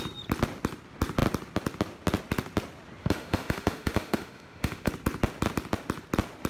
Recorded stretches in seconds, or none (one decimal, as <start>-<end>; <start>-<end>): 0.0-3.0; 4.9-6.5